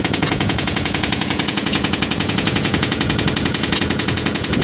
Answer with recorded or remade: remade